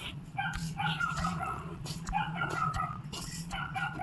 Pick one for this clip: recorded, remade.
remade